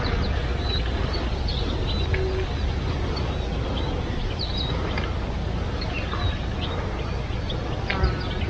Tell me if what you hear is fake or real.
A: real